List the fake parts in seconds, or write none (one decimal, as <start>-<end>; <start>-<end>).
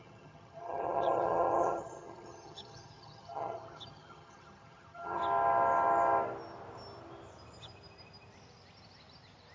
0.0-5.2